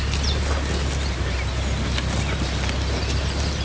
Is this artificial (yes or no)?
no